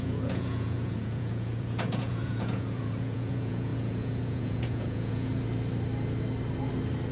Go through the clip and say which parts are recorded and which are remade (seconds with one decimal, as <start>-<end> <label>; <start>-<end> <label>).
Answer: 0.0-5.3 remade; 5.3-7.1 recorded